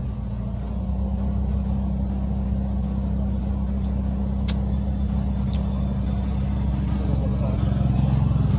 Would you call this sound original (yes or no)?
yes